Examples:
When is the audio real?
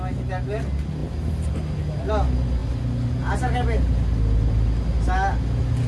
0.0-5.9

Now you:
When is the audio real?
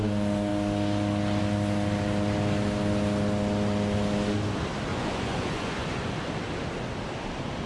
0.0-4.9; 6.2-7.7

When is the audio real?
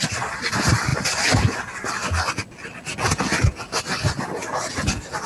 0.0-5.3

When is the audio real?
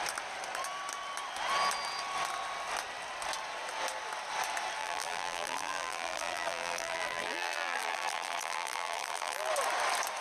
0.0-4.8; 9.5-10.2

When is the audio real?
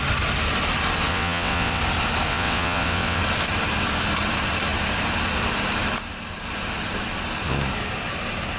0.0-1.1; 1.8-2.3; 3.2-8.6